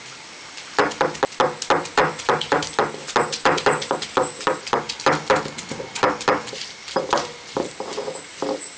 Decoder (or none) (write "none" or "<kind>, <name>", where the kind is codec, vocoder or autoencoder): none